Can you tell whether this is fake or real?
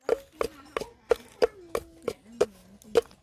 real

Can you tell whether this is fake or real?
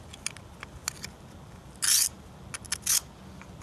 real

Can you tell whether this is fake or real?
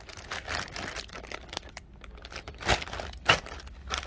real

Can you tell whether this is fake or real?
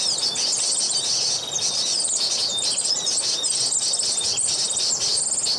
real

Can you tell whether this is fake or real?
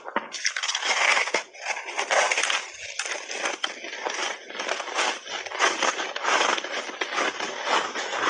real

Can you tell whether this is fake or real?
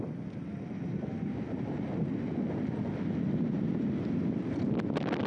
real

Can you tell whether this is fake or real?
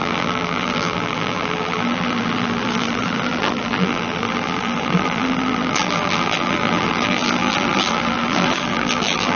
fake